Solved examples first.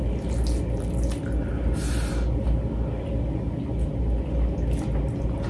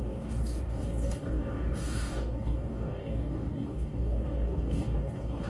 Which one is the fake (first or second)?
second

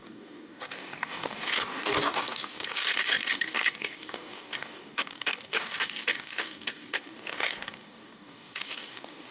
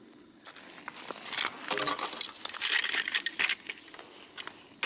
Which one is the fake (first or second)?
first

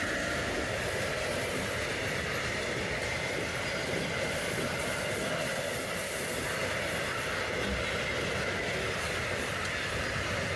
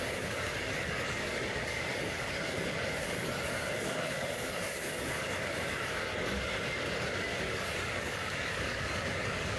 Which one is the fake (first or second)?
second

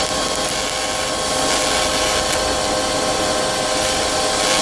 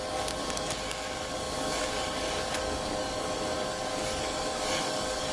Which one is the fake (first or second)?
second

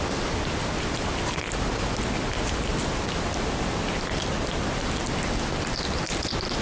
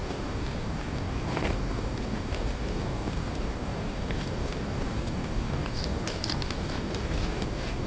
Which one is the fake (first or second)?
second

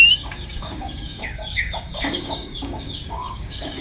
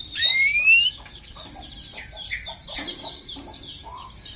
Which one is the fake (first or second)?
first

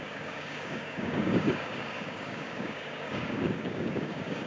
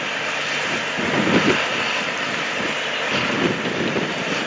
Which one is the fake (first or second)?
first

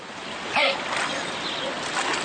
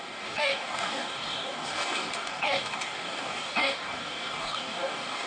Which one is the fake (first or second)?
second